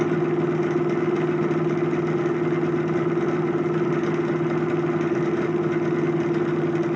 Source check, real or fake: real